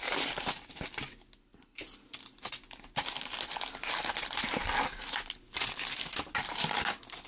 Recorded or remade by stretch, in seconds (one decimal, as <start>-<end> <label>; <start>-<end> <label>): 0.0-7.3 recorded